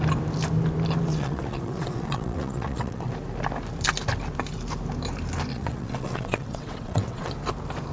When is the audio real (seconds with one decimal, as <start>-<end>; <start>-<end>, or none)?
0.0-1.1; 3.1-5.5; 7.3-7.9